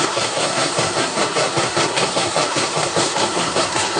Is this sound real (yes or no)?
no